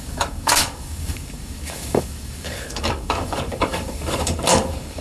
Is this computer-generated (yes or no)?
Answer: yes